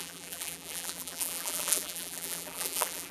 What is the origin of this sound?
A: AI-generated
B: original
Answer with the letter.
A